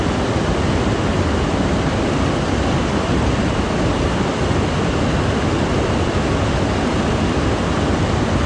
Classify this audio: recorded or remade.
recorded